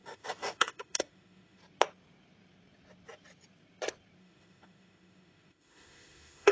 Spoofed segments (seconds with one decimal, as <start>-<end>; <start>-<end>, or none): 0.0-1.6; 4.2-6.5